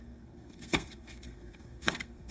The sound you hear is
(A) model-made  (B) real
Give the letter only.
A